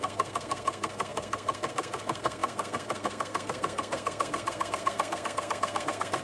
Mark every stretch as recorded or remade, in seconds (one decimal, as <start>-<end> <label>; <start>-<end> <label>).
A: 0.0-6.2 remade